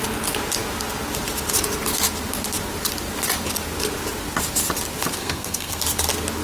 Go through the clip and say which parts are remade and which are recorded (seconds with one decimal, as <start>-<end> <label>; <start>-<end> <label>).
0.0-5.2 recorded; 5.2-5.8 remade; 5.8-6.4 recorded